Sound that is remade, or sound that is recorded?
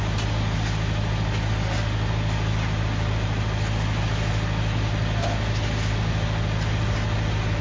recorded